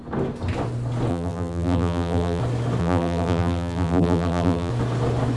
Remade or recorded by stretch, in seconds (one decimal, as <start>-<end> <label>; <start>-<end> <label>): 0.0-1.1 recorded; 1.1-2.4 remade; 2.4-2.8 recorded; 2.8-4.7 remade; 4.7-5.4 recorded